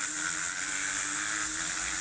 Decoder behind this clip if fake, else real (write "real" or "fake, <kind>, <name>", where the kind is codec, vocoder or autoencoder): real